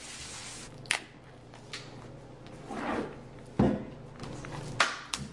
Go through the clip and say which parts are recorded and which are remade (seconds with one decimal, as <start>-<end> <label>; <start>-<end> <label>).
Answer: 0.0-5.3 recorded